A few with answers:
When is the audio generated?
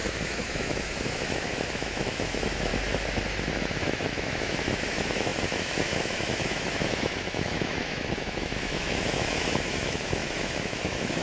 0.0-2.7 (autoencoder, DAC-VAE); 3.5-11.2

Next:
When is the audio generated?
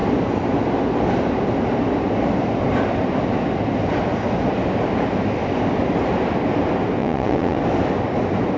7.0-7.6 (vocoder, WaveNeXt)